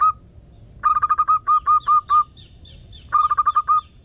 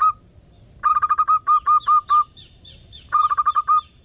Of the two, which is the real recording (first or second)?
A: first